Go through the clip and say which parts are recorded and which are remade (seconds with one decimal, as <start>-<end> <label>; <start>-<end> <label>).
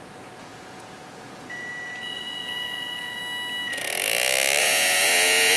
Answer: 0.0-3.2 remade; 3.2-4.6 recorded; 4.6-5.6 remade